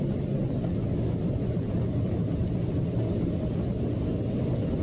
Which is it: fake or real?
fake